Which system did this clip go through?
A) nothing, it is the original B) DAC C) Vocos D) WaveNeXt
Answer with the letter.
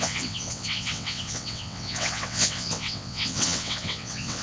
D